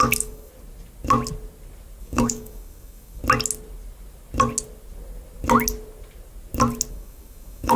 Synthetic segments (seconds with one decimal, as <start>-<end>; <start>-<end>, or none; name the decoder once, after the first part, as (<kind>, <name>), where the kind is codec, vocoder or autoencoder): 0.0-0.5 (codec, DAC); 2.0-3.2; 6.9-7.8

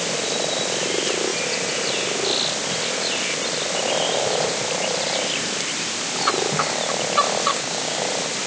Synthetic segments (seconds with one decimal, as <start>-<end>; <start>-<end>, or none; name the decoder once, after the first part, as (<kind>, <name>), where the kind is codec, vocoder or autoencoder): 7.5-8.0 (codec, DAC)

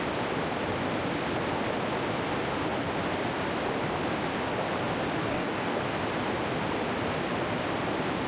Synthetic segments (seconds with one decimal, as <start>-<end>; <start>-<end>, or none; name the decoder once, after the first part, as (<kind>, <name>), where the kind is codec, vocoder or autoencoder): 5.2-5.8 (codec, DAC)